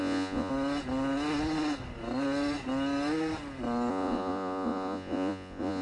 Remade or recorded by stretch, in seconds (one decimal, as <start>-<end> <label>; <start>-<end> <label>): 0.0-0.5 remade; 0.5-3.9 recorded; 3.9-5.8 remade